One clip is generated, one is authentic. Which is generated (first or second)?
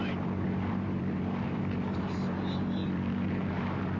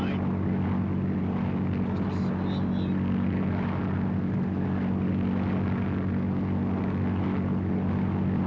first